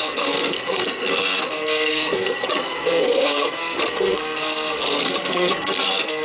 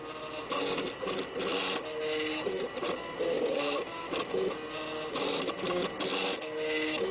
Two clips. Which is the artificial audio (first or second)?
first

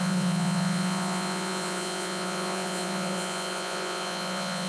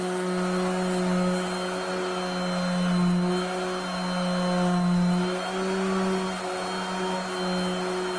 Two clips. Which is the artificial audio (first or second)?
first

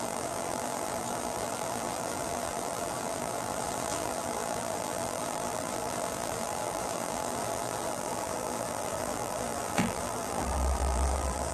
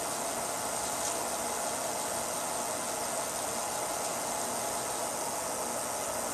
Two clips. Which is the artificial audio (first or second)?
first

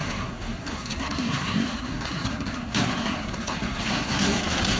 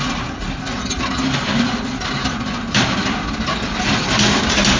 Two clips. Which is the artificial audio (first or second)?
first